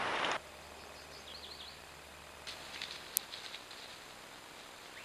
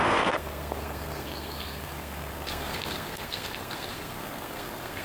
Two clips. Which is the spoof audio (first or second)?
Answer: second